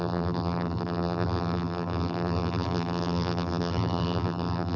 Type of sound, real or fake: fake